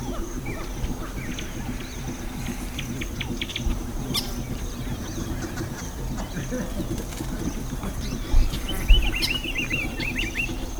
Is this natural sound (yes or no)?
no